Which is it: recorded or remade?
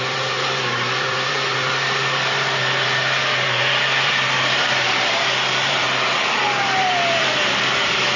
remade